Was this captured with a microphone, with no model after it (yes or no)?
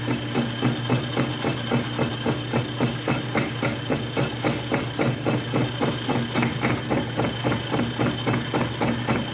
yes